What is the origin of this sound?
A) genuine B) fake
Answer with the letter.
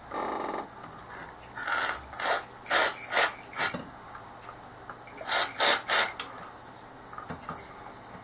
A